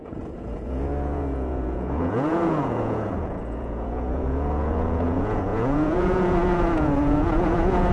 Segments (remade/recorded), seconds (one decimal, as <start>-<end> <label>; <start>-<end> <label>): 0.0-7.9 remade

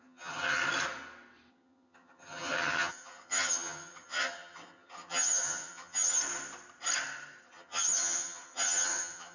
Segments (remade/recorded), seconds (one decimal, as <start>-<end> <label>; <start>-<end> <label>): 0.0-0.6 remade; 0.6-1.5 recorded; 1.5-6.2 remade; 6.2-7.4 recorded; 7.4-9.3 remade

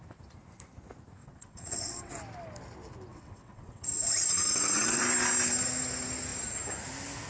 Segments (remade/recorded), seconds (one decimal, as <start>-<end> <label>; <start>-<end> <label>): 0.0-1.2 recorded; 1.2-2.1 remade; 2.1-3.1 recorded; 3.1-5.0 remade; 5.0-7.3 recorded